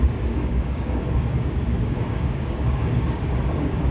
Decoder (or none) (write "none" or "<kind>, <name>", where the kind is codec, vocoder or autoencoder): codec, DAC